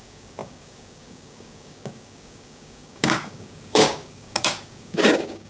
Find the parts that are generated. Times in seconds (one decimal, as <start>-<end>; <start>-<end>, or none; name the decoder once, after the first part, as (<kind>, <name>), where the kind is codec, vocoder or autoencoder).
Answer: 0.0-5.5 (codec, DAC)

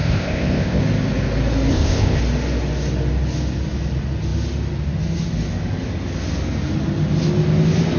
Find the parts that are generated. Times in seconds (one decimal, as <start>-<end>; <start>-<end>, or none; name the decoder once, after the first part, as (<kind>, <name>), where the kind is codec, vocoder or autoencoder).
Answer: 0.0-0.8 (codec, ZipCodec); 1.7-2.2

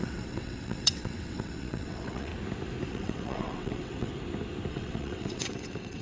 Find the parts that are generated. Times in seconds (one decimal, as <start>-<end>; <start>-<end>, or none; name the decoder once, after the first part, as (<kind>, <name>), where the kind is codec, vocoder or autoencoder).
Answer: 0.0-2.3 (vocoder, WaveNeXt); 2.9-4.1; 4.7-6.0

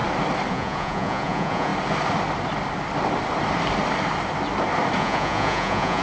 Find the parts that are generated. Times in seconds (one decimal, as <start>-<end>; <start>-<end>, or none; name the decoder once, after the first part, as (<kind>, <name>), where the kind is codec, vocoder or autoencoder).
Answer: 0.5-1.7 (vocoder, Vocos); 5.0-6.0

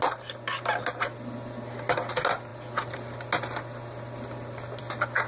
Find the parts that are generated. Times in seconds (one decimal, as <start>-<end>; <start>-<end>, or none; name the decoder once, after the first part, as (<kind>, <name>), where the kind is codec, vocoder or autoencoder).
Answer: none